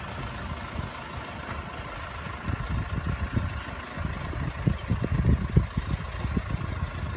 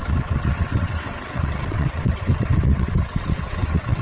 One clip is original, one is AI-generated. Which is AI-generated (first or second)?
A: second